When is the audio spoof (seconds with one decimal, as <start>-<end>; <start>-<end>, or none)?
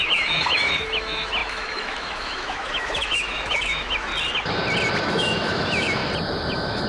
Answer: 0.0-4.1; 5.0-6.0; 6.5-6.9